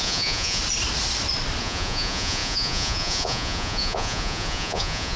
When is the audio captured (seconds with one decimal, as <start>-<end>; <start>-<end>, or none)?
0.6-1.6